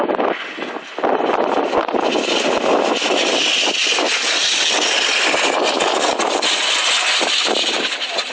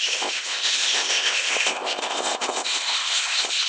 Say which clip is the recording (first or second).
first